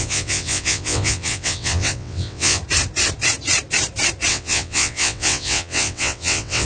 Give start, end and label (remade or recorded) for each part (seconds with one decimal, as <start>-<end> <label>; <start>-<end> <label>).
0.0-2.6 remade; 2.6-4.3 recorded; 4.3-6.6 remade